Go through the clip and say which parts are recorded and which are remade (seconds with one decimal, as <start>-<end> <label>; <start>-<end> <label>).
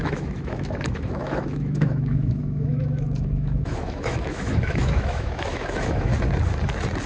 0.0-6.1 remade; 6.1-7.1 recorded